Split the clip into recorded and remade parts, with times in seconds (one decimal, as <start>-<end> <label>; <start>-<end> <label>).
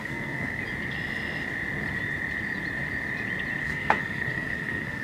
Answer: 0.0-0.6 remade; 0.6-3.6 recorded; 3.6-5.0 remade